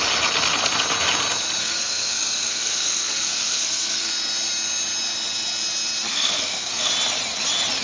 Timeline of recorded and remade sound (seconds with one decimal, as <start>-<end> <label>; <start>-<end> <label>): 0.0-1.6 recorded; 1.6-4.1 remade; 4.1-6.1 recorded; 6.1-6.9 remade; 6.9-7.8 recorded